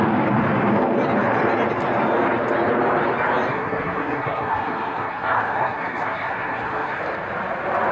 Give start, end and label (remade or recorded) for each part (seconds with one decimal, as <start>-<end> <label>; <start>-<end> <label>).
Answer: 0.0-3.5 recorded; 3.5-7.0 remade; 7.0-7.9 recorded